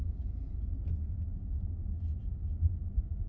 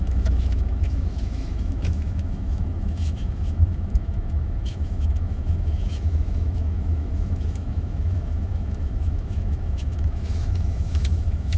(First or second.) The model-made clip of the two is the second